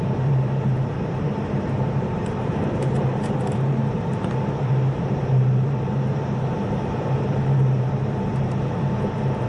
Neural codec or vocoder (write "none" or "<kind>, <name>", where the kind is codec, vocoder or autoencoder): vocoder, BigVGAN v2